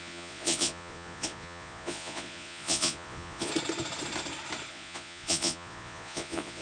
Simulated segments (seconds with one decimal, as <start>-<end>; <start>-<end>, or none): 0.0-3.5; 4.7-6.6